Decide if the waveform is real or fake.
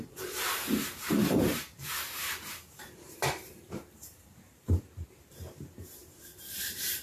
fake